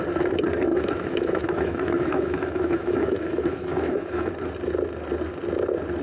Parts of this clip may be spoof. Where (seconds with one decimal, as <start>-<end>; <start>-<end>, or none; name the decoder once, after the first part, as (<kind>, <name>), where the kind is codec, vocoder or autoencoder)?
0.7-4.3 (autoencoder, DAC-VAE)